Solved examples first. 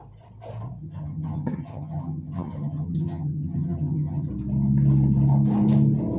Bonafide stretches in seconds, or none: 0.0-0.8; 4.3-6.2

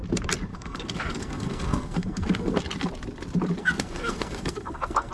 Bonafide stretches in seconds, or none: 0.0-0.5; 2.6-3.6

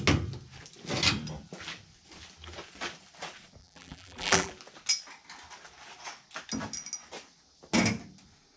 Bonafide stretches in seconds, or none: 0.0-3.6; 4.5-8.6

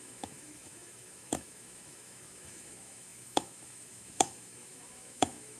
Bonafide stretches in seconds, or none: none

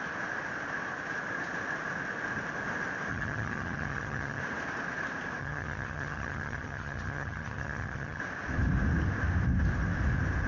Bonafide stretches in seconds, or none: 0.0-3.1; 4.4-5.4; 8.2-10.5

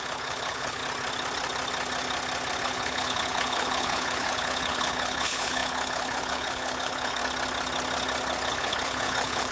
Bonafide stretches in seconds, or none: 0.8-2.6; 7.2-8.5

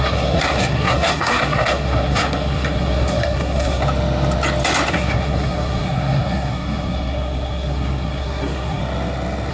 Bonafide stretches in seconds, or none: 3.8-4.9; 8.8-9.5

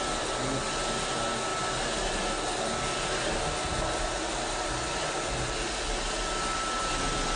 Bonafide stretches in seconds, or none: 0.0-7.4